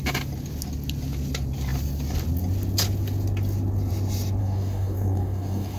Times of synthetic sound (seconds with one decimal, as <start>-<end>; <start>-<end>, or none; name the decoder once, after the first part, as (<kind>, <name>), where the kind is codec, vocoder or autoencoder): 4.4-5.8 (codec, DAC)